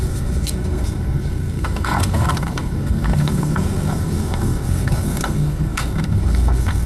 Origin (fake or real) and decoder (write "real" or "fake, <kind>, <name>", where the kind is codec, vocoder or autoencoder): fake, codec, SNAC